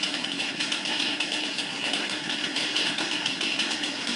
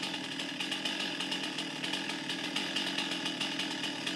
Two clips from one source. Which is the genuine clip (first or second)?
second